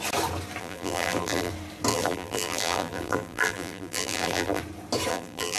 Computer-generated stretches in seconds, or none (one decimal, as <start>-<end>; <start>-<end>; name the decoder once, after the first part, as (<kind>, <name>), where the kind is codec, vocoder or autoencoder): 0.6-1.5 (vocoder, BigVGAN v2); 1.9-4.6; 5.1-5.6

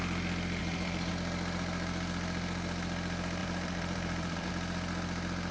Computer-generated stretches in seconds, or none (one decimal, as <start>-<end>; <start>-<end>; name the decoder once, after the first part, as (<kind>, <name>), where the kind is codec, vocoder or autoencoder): 0.6-1.1 (vocoder, BigVGAN v2); 3.4-4.5

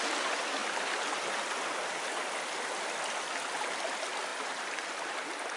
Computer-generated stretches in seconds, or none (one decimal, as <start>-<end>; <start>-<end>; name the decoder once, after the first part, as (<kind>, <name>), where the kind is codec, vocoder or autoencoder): none

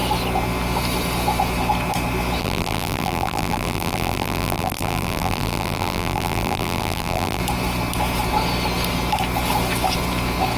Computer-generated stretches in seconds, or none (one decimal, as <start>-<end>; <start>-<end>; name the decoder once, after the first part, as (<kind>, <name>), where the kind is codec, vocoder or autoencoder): 2.4-7.4 (vocoder, BigVGAN v2)

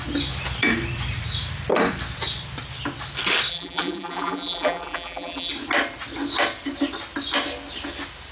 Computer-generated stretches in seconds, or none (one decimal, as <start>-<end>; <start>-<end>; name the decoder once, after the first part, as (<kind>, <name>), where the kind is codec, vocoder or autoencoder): 3.5-5.5 (vocoder, BigVGAN v2)

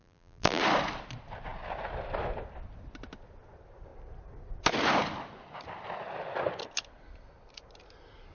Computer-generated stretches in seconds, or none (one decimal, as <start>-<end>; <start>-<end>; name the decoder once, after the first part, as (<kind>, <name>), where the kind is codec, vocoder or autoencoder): 0.0-0.6 (vocoder, BigVGAN v2)